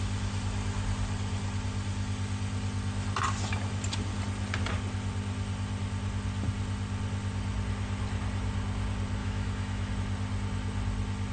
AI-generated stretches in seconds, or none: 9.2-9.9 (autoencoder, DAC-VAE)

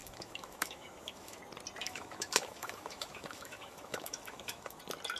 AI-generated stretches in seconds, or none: 0.0-1.4 (autoencoder, DAC-VAE); 1.8-4.8

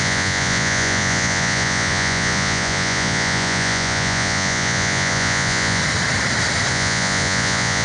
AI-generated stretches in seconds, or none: 0.0-5.8 (vocoder, Vocos); 6.7-7.8

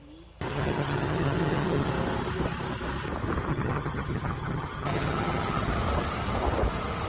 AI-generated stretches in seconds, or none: 0.5-1.9 (vocoder, HiFi-GAN); 3.5-5.7

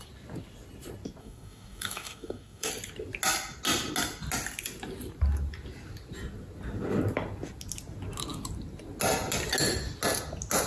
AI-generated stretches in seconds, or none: 1.2-2.7 (codec, DAC)

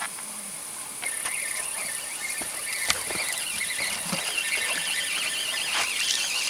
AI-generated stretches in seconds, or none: none